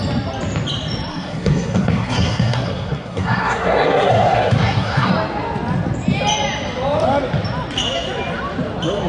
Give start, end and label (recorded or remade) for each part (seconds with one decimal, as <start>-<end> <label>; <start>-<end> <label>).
0.0-1.1 recorded; 1.1-5.1 remade; 5.1-9.1 recorded

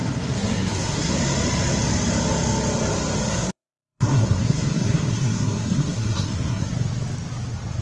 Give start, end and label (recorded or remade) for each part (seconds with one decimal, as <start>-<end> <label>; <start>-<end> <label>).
0.0-1.1 remade; 1.1-3.3 recorded; 3.3-6.7 remade; 6.7-7.8 recorded

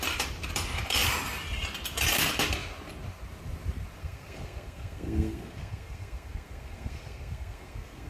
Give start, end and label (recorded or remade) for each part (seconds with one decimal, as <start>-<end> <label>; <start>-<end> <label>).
0.0-4.0 recorded; 4.0-8.1 remade

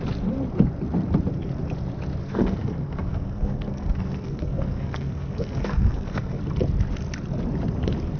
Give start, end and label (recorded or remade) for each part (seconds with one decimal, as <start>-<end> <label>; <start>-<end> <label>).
0.0-2.2 recorded; 2.2-6.4 remade; 6.4-8.2 recorded

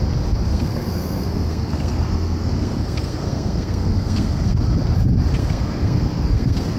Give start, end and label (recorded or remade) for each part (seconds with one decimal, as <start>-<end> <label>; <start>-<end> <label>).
0.0-0.5 recorded; 0.5-4.6 remade; 4.6-5.4 recorded; 5.4-6.8 remade

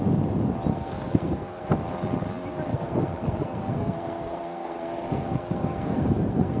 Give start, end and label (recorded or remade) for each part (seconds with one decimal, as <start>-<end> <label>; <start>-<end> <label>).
0.0-0.7 recorded; 0.7-1.7 remade; 1.7-2.7 recorded; 2.7-6.6 remade

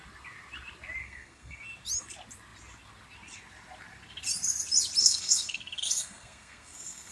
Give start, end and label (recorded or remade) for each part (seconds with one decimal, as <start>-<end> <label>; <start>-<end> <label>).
0.0-1.0 recorded; 1.0-1.6 remade; 1.6-5.0 recorded; 5.0-7.1 remade

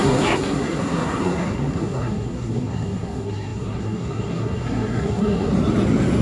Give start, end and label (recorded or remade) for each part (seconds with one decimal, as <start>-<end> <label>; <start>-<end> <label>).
0.0-5.5 remade; 5.5-6.2 recorded